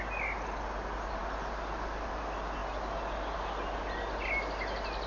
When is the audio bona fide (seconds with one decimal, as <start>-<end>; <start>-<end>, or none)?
0.0-5.1